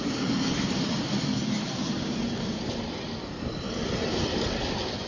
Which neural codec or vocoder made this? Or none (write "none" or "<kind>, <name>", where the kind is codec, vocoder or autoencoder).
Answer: none